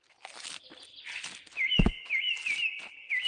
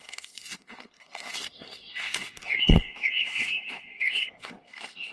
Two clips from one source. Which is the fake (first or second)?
second